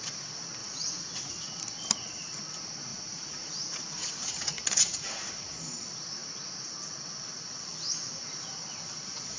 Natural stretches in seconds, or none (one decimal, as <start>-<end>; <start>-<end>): 0.0-0.6; 1.3-2.9; 5.3-9.4